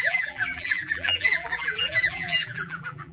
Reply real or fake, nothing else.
fake